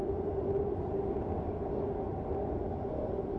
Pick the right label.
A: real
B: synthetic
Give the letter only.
A